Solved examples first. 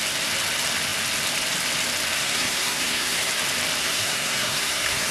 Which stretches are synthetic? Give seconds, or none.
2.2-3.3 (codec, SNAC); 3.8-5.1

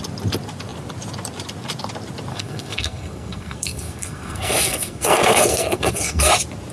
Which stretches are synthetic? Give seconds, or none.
2.3-6.3 (codec, SNAC)